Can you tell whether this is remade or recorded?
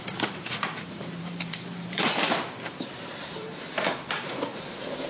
remade